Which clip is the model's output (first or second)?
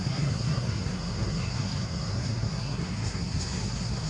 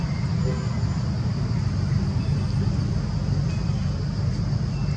first